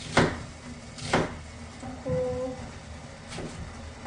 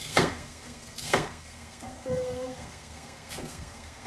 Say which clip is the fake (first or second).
second